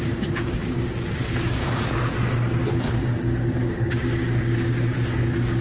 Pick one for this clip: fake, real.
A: fake